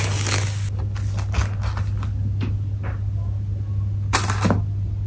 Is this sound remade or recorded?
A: recorded